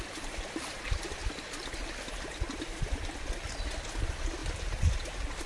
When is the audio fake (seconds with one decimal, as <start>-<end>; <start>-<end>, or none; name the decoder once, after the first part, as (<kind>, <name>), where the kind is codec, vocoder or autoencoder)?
none